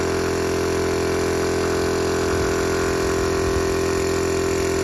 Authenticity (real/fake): real